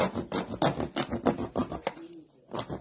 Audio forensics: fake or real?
real